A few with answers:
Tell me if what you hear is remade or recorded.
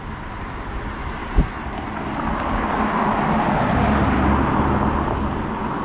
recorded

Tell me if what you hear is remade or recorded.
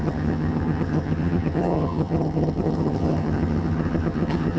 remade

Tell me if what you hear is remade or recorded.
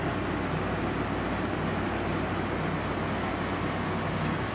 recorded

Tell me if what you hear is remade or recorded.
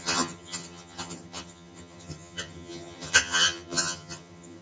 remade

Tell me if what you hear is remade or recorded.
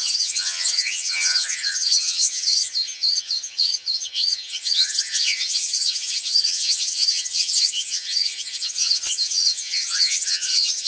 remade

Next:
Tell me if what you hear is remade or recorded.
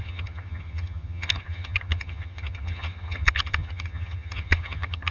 remade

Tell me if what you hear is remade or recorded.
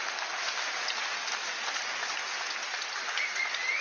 recorded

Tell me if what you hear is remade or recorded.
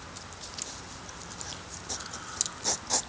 recorded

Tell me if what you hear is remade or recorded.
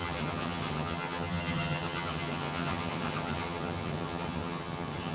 remade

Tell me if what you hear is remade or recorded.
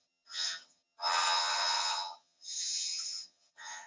remade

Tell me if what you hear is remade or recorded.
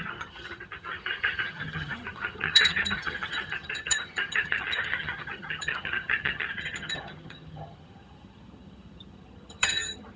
remade